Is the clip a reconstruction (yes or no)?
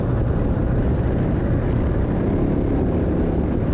no